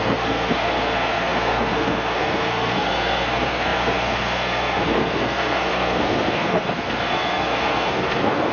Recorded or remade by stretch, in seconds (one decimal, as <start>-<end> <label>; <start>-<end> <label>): 0.0-8.5 remade